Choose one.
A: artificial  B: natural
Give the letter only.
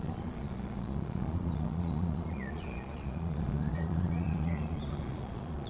A